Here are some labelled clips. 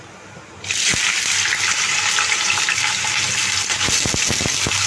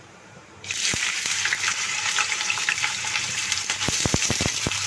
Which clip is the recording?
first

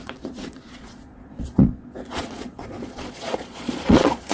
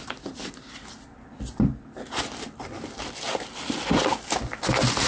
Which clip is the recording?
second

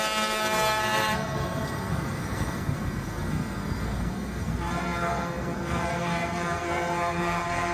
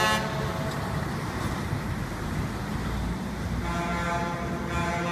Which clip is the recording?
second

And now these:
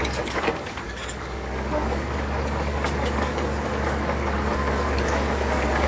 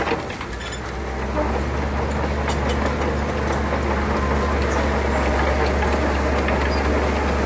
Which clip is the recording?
second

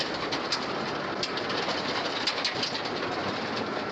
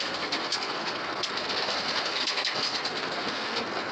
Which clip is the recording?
first